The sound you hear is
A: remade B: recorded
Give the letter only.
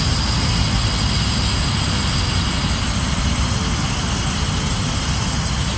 B